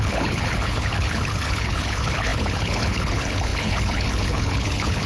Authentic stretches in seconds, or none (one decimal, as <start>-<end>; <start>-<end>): none